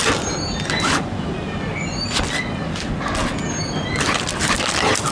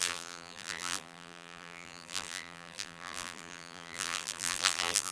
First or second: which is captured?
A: first